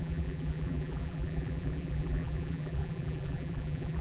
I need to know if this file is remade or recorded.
remade